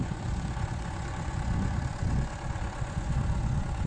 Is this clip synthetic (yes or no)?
yes